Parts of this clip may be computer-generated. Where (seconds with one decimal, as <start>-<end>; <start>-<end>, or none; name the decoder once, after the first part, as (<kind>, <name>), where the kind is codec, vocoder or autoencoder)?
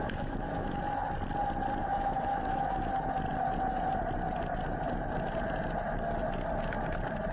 0.0-0.8 (autoencoder, DAC-VAE); 1.8-2.9